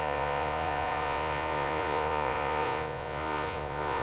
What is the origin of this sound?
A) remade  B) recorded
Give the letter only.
A